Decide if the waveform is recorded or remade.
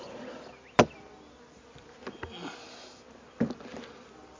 recorded